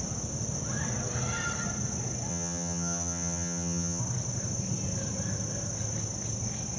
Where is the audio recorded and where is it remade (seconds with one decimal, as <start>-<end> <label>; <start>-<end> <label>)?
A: 0.0-2.3 recorded; 2.3-4.0 remade; 4.0-6.8 recorded